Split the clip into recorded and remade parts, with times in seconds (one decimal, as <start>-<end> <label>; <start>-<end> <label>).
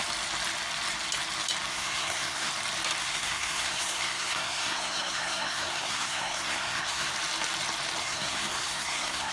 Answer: 0.0-1.7 recorded; 1.7-2.5 remade; 2.5-3.0 recorded; 3.0-7.1 remade; 7.1-8.0 recorded; 8.0-9.3 remade